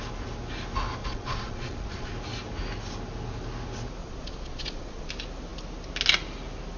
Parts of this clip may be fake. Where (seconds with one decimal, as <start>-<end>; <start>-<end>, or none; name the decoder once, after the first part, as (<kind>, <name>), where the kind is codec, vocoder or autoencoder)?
1.0-2.1 (vocoder, Vocos); 4.0-5.1